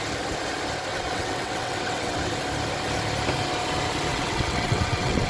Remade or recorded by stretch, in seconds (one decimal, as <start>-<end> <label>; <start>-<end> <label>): 0.0-0.9 recorded; 0.9-2.3 remade; 2.3-4.1 recorded; 4.1-5.3 remade